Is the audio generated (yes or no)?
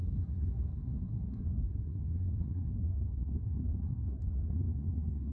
yes